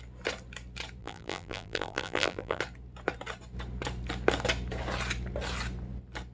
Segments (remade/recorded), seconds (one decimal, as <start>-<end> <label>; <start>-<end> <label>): 0.0-1.0 recorded; 1.0-2.6 remade; 2.6-6.3 recorded